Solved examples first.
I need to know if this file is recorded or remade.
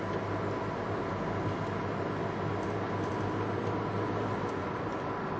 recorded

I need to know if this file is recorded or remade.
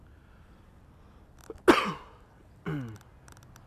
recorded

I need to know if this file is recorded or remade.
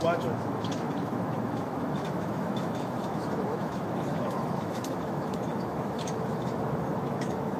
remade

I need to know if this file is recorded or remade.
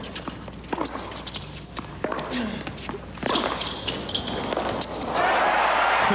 recorded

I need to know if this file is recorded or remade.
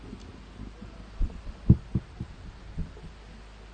recorded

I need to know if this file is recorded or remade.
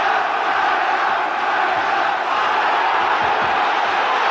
recorded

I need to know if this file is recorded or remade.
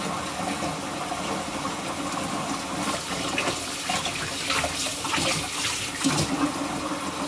recorded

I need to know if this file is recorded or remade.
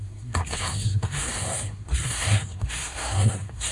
remade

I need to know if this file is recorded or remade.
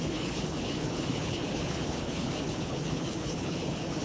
remade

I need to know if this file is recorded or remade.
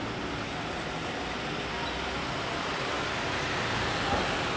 recorded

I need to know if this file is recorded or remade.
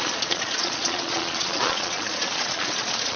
remade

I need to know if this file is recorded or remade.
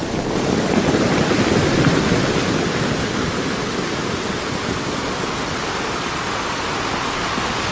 recorded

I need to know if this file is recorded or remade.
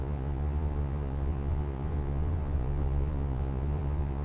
remade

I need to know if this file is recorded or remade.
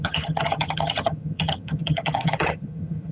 remade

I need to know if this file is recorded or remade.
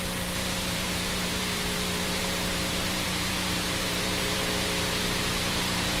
remade